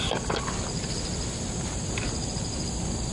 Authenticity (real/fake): real